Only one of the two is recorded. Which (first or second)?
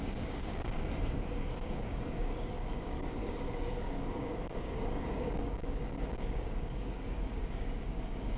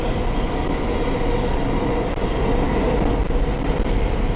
second